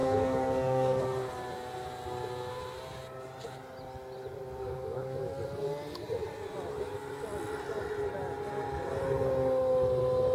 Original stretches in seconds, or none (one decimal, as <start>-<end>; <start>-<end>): 1.0-4.6; 5.2-10.3